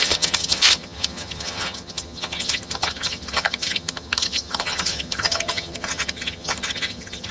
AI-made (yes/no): yes